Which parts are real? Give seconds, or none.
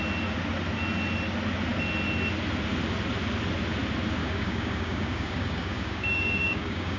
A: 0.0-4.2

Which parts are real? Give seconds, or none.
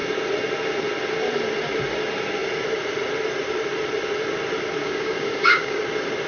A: 0.0-4.8; 5.8-6.3